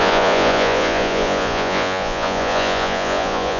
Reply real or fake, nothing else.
fake